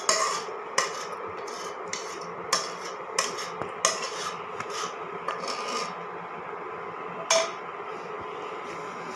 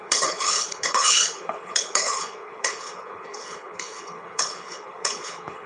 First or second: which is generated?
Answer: second